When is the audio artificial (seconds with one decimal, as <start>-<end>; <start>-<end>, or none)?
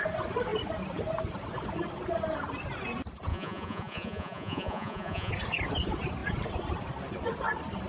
3.3-5.3